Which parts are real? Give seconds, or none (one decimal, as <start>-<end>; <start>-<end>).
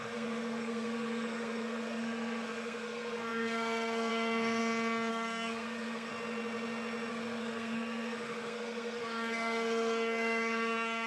4.6-5.1; 6.1-7.1